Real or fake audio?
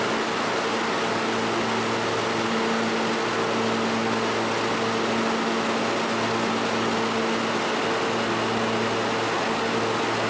real